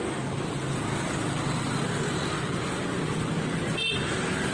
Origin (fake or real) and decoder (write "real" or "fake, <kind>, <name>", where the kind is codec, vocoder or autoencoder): real